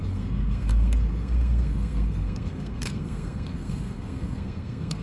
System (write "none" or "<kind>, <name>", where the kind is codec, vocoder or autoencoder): codec, SNAC